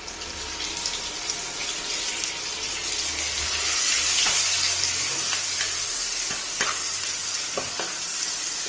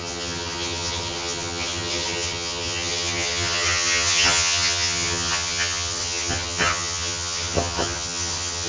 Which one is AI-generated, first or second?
second